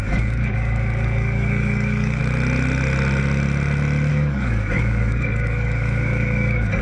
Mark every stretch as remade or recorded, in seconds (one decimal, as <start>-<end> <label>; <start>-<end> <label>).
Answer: 0.0-2.2 remade; 2.2-4.1 recorded; 4.1-6.8 remade